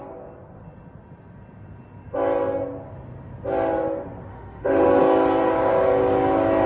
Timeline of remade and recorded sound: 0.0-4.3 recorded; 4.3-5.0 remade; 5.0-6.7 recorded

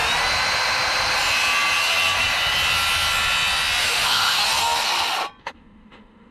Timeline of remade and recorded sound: 0.0-3.8 recorded; 3.8-4.4 remade; 4.4-5.4 recorded; 5.4-6.3 remade